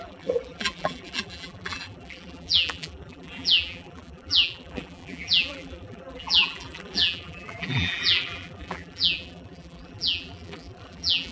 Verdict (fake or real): fake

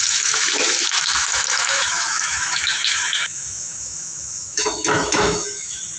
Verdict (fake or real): fake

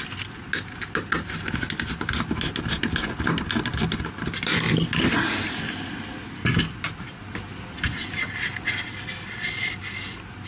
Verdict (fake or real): real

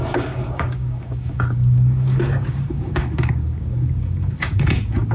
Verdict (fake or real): fake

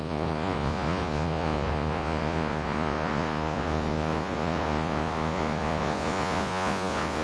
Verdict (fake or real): fake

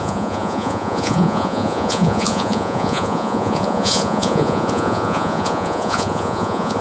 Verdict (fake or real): fake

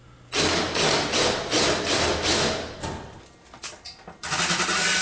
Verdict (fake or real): real